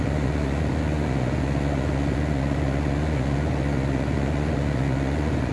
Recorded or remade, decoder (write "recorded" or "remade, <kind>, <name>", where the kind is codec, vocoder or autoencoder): remade, vocoder, Vocos